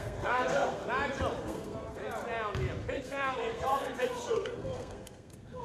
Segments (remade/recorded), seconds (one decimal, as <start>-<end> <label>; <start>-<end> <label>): 0.0-0.8 remade; 0.8-1.4 recorded; 1.4-2.0 remade; 2.0-3.0 recorded; 3.0-5.6 remade